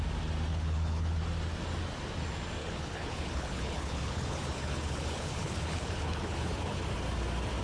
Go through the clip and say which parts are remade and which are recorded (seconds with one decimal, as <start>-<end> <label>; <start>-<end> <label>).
0.0-0.5 recorded; 0.5-1.2 remade; 1.2-2.6 recorded; 2.6-6.8 remade; 6.8-7.6 recorded